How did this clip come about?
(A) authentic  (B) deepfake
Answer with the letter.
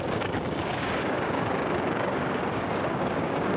B